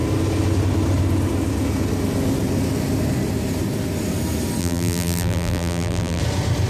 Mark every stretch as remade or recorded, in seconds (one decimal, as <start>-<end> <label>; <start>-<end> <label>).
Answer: 0.0-4.6 recorded; 4.6-6.2 remade; 6.2-6.7 recorded